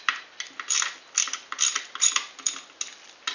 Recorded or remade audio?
recorded